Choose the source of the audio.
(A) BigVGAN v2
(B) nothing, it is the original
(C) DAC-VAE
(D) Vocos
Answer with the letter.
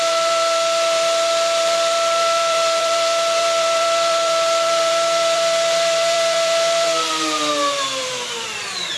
A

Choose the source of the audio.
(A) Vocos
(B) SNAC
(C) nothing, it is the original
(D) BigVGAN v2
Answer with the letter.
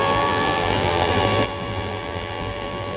D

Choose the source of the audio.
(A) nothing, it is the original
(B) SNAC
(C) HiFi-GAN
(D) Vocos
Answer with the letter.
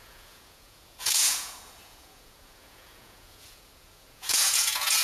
D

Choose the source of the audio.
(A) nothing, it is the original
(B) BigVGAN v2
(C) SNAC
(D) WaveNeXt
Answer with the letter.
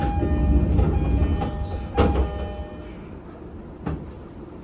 A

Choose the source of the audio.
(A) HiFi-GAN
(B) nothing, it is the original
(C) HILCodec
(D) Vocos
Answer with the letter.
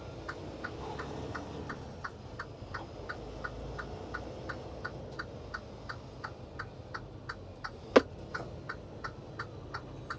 B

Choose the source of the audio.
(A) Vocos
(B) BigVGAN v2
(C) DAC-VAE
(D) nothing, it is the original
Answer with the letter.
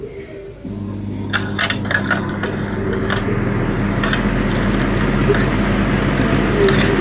D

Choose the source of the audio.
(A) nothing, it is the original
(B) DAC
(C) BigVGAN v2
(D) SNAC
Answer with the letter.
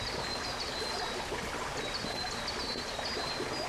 A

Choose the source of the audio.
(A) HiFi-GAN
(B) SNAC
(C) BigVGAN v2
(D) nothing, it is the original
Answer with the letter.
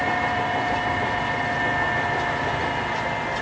D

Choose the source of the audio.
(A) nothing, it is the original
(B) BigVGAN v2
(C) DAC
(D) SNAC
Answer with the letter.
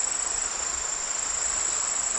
A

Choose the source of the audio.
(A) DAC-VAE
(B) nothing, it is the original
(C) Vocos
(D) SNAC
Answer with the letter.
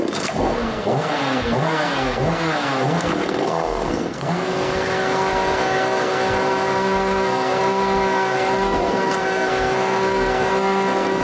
D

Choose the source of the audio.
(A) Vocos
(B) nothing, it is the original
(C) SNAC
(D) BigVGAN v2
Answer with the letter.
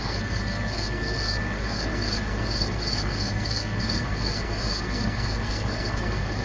C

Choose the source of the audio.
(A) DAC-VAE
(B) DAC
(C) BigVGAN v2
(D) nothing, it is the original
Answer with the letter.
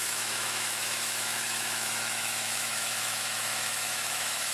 A